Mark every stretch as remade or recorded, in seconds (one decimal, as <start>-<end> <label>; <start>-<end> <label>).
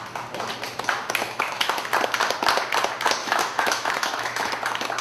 0.0-1.2 recorded; 1.2-1.8 remade; 1.8-3.2 recorded; 3.2-4.5 remade; 4.5-5.0 recorded